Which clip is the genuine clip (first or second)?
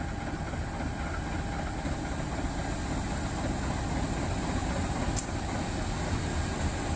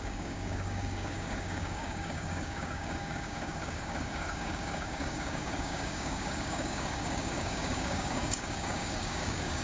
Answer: first